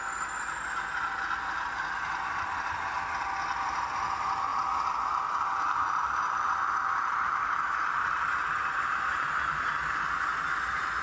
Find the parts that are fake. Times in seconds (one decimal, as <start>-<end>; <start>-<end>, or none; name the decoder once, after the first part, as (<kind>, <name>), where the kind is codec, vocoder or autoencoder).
none